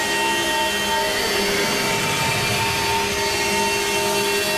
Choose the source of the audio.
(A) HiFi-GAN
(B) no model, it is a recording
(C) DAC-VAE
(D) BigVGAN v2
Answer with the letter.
B